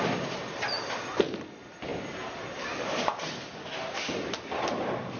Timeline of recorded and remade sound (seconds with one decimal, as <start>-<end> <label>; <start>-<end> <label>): 0.0-1.9 remade; 1.9-5.2 recorded